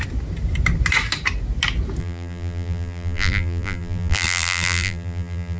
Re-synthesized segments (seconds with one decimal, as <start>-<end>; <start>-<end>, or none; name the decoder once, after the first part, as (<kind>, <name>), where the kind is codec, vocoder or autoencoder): 2.0-5.6 (vocoder, BigVGAN v2)